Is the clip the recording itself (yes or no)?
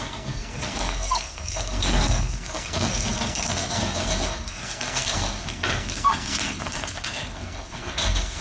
no